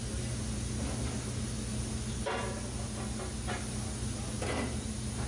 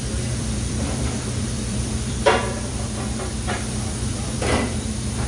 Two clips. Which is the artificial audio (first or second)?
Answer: second